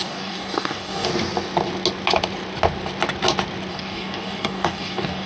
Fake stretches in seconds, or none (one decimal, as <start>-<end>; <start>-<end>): 0.0-1.1; 3.7-5.3